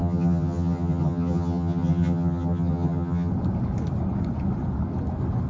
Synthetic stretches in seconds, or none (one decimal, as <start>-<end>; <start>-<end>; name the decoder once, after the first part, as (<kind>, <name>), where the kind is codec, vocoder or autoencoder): 0.0-3.3 (vocoder, HiFi-GAN)